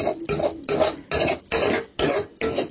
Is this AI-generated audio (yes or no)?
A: no